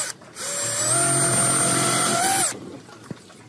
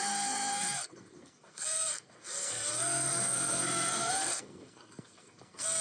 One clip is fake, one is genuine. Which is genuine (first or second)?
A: first